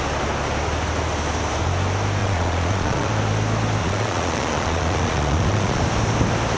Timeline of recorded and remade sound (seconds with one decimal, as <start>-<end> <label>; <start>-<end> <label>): 0.0-2.2 recorded; 2.2-3.1 remade; 3.1-3.8 recorded; 3.8-5.8 remade; 5.8-6.6 recorded